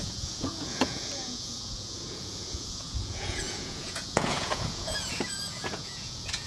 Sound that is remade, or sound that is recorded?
remade